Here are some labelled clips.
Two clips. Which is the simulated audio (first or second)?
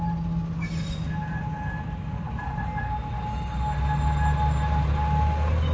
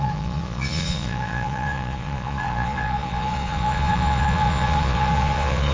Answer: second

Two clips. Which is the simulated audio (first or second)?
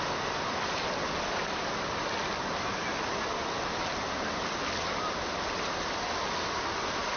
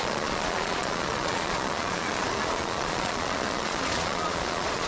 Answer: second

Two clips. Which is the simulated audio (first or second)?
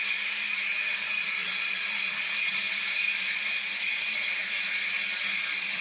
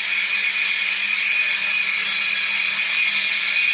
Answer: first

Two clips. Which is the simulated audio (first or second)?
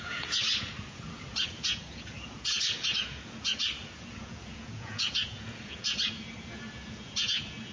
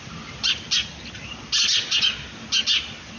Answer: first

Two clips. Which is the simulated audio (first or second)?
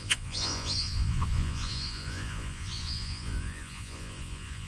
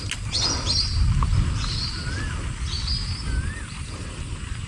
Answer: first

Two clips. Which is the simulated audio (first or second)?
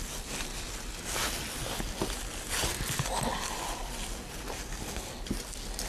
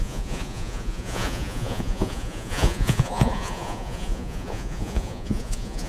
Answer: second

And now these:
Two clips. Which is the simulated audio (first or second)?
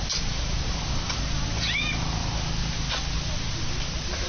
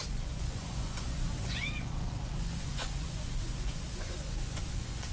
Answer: second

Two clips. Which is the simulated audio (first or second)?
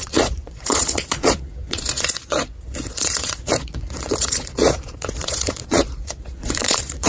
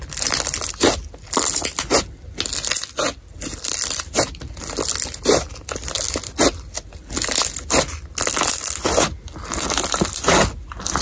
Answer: first